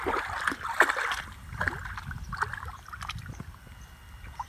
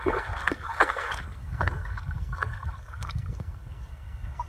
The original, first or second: first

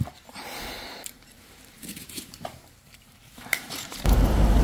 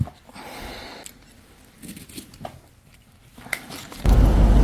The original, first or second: second